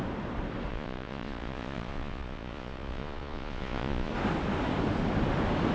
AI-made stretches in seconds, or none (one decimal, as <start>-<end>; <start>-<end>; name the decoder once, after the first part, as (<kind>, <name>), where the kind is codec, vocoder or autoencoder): 0.7-4.1 (vocoder, Vocos)